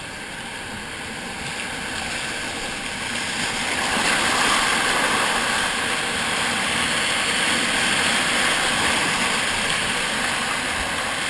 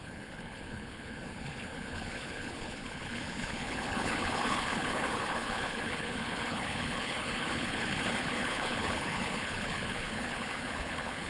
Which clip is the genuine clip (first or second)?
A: first